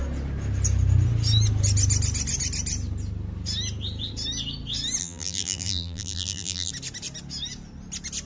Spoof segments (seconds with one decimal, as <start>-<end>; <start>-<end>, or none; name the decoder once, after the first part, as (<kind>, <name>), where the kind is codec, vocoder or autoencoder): 5.0-6.7 (vocoder, BigVGAN v2)